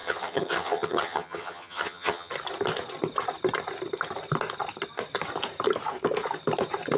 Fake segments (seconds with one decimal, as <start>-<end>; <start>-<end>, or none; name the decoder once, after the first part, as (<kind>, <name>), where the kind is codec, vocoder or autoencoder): 0.0-2.3 (vocoder, HiFi-GAN)